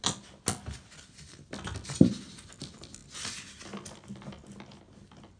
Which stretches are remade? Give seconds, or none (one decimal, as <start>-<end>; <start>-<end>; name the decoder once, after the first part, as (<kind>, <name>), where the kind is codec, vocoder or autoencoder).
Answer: none